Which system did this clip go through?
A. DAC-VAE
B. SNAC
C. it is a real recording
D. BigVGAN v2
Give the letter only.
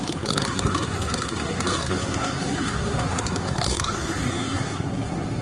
B